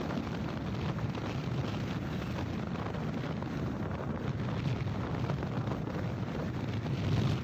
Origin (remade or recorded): recorded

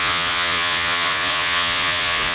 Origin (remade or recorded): remade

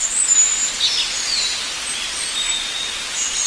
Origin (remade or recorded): recorded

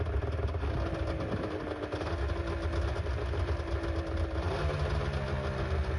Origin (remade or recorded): recorded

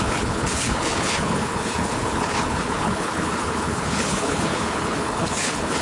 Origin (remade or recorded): remade